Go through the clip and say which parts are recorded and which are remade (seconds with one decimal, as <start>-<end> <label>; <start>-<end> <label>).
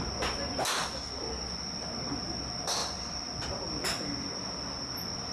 0.0-5.3 recorded